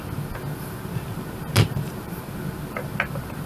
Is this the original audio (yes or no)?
yes